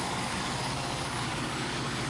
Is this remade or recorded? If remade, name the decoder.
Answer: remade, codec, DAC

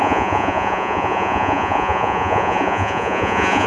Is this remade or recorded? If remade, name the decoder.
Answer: remade, vocoder, Vocos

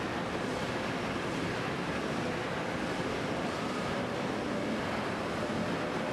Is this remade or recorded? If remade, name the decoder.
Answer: recorded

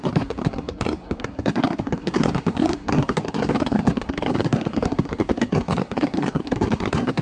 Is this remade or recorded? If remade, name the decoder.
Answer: remade, codec, SNAC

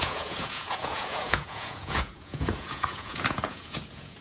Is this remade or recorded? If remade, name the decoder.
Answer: remade, vocoder, Vocos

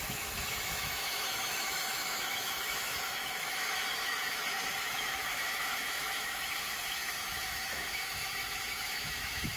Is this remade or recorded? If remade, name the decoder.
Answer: remade, autoencoder, DAC-VAE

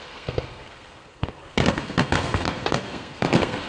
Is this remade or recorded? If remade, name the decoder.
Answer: remade, codec, SNAC